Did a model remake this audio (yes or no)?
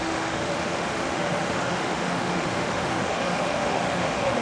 yes